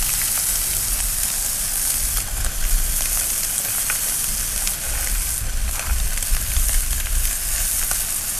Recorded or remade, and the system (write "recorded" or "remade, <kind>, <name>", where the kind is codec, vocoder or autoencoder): recorded